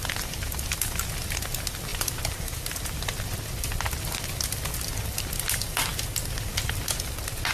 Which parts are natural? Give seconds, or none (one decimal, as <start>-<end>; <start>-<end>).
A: 0.0-7.5